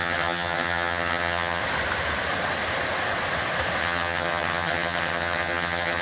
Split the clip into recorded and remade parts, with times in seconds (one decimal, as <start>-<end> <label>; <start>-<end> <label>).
0.0-1.6 remade; 1.6-3.8 recorded; 3.8-6.0 remade